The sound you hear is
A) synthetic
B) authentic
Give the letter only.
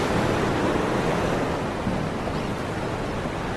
B